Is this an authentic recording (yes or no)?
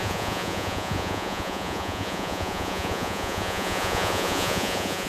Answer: no